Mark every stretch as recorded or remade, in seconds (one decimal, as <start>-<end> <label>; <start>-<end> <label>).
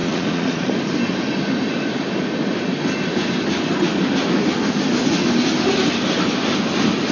0.0-0.7 remade; 0.7-7.1 recorded